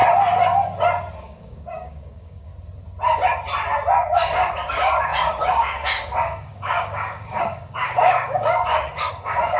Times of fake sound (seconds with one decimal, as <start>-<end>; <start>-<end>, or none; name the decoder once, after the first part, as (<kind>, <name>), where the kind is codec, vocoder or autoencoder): 1.2-2.5 (codec, DAC); 4.1-9.6

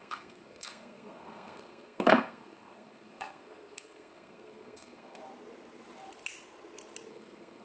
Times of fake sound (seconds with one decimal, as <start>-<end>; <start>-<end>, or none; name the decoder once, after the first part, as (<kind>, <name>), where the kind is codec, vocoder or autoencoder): 0.0-5.2 (codec, SNAC); 7.1-7.6

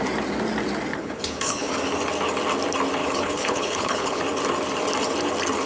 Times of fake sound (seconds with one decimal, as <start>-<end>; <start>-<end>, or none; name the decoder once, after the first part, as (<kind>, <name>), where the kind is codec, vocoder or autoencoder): 0.9-1.7 (codec, HILCodec); 3.0-4.2